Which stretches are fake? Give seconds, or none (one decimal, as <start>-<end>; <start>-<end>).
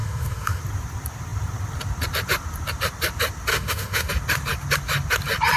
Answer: 0.0-0.6; 3.5-4.1